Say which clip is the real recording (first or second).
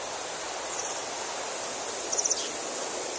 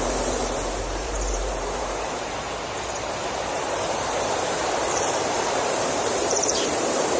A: first